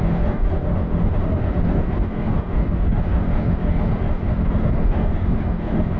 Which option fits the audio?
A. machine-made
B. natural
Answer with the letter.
A